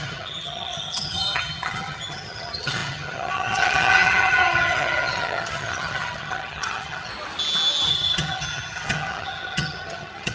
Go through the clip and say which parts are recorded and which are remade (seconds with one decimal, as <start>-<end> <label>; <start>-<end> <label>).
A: 0.0-7.1 remade; 7.1-7.9 recorded; 7.9-10.3 remade